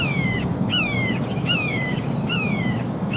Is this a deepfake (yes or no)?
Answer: yes